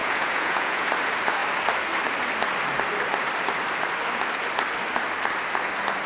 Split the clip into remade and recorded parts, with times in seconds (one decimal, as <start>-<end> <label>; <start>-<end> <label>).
0.0-0.9 remade; 0.9-6.1 recorded